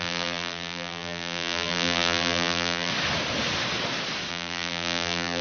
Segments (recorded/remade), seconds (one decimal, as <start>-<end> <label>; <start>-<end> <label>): 0.0-2.9 remade; 2.9-4.3 recorded; 4.3-5.4 remade